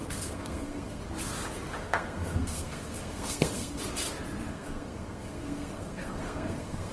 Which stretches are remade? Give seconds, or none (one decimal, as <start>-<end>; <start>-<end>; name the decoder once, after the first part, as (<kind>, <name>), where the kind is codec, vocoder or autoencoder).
0.0-1.0 (codec, SNAC); 1.8-3.8; 4.5-6.9